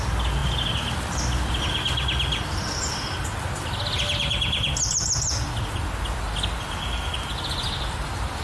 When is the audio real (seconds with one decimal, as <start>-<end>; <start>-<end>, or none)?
0.0-8.4